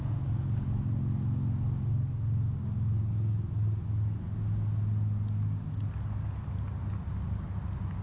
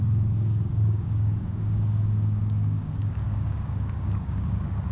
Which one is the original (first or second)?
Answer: first